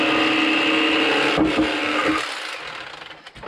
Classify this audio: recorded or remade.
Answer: recorded